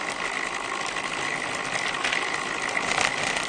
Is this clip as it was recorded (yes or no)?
yes